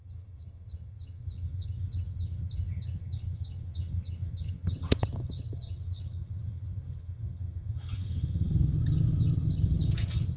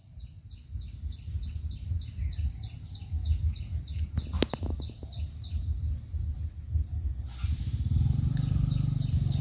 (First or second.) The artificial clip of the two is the first